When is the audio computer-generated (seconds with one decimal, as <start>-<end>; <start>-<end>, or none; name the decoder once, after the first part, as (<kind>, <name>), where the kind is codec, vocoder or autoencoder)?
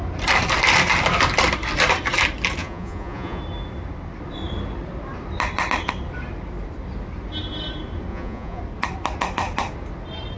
2.6-3.4 (vocoder, Vocos); 8.1-8.6